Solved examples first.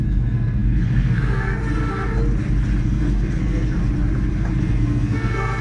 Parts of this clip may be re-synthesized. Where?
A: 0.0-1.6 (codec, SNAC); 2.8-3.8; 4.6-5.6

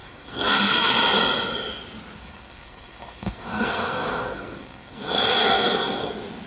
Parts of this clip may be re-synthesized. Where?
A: 0.0-0.9 (codec, SNAC); 2.2-6.1

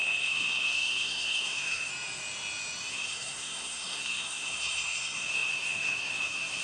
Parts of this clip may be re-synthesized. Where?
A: 0.0-1.9 (codec, SNAC); 2.9-6.6

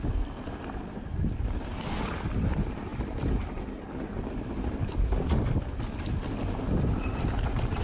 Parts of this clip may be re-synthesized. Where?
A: none